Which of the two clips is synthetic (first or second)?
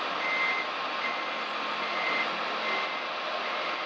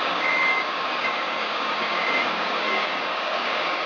second